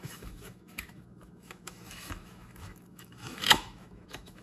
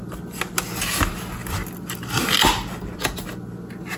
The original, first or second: second